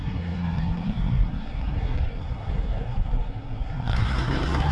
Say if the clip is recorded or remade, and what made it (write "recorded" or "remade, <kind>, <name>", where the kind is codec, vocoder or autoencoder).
remade, codec, SNAC